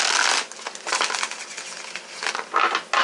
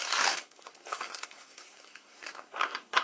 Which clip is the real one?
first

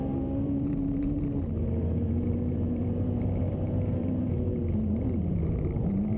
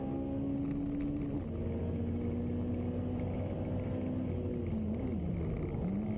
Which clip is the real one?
second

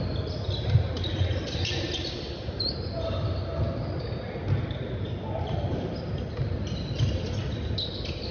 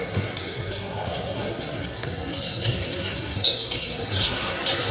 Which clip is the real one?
first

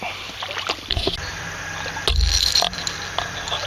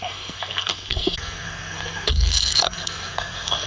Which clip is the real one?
first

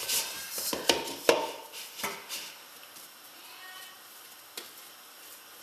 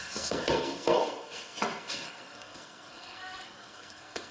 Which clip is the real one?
first